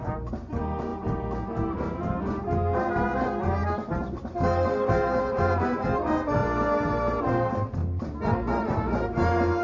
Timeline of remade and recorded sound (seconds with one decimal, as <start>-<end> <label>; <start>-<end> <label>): 0.0-6.4 remade; 6.4-7.2 recorded; 7.2-7.8 remade; 7.8-8.5 recorded; 8.5-9.6 remade